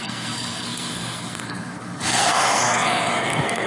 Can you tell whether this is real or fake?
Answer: fake